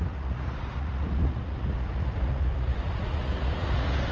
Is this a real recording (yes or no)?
no